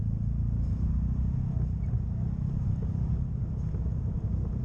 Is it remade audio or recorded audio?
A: recorded